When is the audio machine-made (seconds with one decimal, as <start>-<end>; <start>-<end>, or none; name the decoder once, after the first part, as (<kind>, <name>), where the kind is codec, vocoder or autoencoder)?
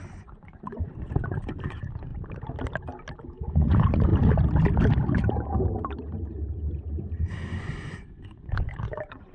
0.0-2.1 (vocoder, Vocos); 3.2-4.1; 7.6-9.3